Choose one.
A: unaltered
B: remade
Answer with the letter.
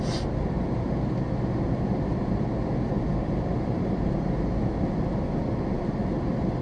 A